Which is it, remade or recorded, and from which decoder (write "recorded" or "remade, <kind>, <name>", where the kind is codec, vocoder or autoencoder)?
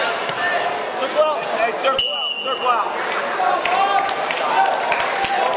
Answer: recorded